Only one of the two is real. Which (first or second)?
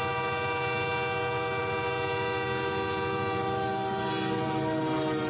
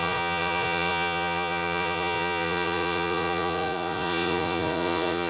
first